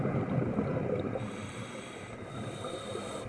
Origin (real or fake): real